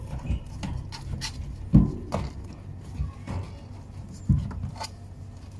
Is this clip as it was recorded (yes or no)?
yes